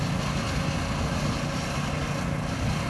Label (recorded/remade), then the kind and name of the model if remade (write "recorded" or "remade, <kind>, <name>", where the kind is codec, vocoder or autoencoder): recorded